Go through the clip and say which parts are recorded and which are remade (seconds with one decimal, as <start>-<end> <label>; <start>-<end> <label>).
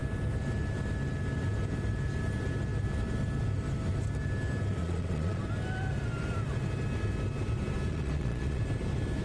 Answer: 0.0-4.8 recorded; 4.8-5.4 remade; 5.4-7.9 recorded; 7.9-8.6 remade; 8.6-9.2 recorded